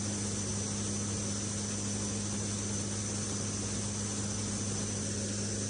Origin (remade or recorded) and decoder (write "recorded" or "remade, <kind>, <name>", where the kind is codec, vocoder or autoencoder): recorded